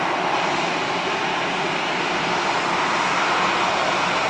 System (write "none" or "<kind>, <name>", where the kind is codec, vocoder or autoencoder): none